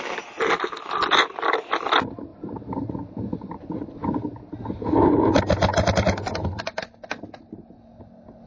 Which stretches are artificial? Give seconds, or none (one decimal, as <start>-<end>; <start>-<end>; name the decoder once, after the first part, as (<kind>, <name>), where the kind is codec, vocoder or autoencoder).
none